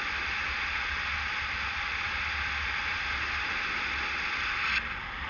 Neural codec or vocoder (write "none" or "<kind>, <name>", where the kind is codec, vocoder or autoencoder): none